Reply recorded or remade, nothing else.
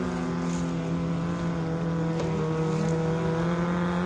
recorded